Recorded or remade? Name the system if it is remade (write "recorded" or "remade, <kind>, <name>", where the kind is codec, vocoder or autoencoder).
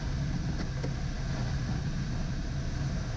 recorded